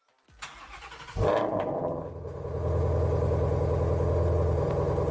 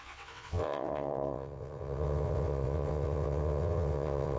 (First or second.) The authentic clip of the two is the first